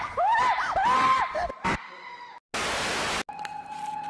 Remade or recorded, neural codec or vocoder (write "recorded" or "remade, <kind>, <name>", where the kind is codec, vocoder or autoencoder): recorded